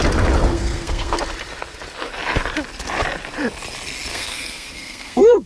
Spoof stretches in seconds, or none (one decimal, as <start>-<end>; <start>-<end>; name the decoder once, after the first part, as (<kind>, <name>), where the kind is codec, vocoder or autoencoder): 0.5-1.1 (codec, SNAC); 4.1-5.5